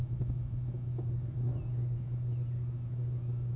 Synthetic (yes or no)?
no